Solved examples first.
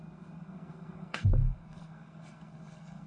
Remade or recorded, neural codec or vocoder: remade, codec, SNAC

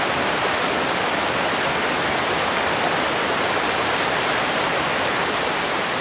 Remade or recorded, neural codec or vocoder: recorded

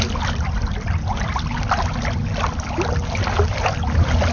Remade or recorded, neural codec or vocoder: recorded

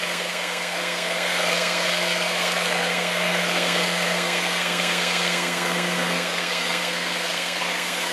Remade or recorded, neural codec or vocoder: remade, codec, SNAC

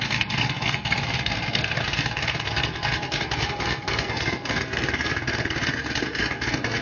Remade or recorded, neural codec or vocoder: remade, codec, SNAC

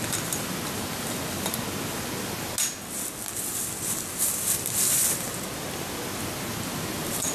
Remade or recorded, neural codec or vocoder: recorded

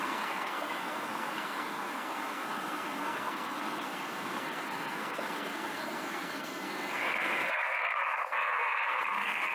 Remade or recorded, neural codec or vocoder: remade, codec, SNAC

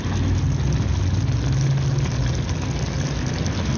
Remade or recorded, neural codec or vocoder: recorded